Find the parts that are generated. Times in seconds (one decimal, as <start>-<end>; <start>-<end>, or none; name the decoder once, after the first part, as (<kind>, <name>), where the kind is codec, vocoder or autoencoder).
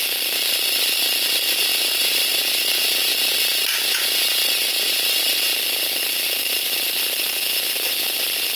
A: 0.0-1.7 (vocoder, BigVGAN v2); 4.7-8.6